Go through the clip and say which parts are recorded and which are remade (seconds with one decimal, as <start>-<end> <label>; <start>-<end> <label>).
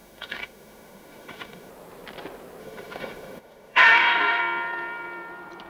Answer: 0.0-1.7 remade; 1.7-2.6 recorded; 2.6-4.4 remade; 4.4-5.7 recorded